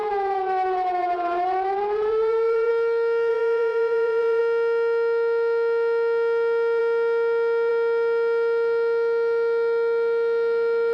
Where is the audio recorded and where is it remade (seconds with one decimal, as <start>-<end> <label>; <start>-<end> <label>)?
0.0-2.7 remade; 2.7-3.3 recorded; 3.3-4.4 remade; 4.4-10.9 recorded